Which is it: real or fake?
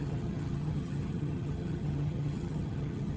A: fake